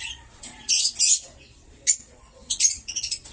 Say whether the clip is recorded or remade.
remade